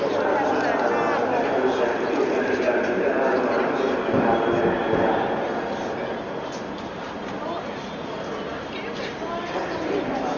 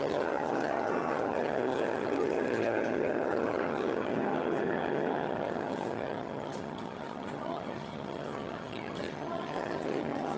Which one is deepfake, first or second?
second